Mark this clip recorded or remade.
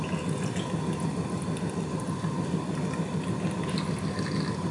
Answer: recorded